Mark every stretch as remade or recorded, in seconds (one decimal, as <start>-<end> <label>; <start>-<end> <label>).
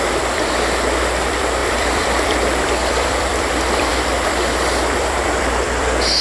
0.0-6.2 remade